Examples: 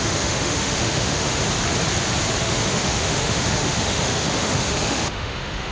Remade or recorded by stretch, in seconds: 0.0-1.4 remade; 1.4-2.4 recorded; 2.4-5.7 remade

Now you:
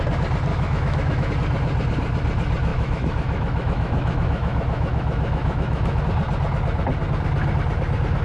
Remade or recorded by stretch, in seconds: 0.0-0.5 recorded; 0.5-1.3 remade; 1.3-2.7 recorded; 2.7-6.0 remade; 6.0-8.2 recorded

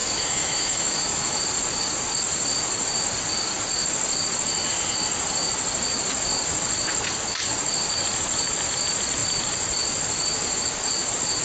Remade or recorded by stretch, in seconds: 0.0-1.4 remade; 1.4-11.4 recorded

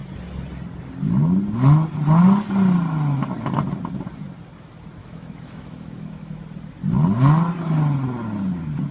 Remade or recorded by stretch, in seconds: 0.0-5.0 recorded; 5.0-6.4 remade; 6.4-8.9 recorded

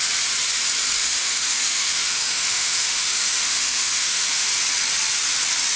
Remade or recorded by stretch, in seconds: 0.0-1.0 recorded; 1.0-4.5 remade; 4.5-5.8 recorded

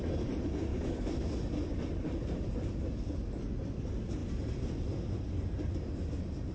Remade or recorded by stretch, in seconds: 0.0-0.7 recorded; 0.7-1.3 remade; 1.3-6.5 recorded

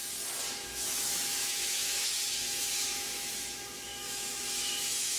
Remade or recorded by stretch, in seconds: 0.0-0.5 recorded; 0.5-5.2 remade